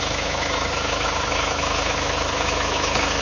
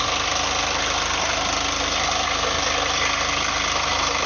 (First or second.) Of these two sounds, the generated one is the first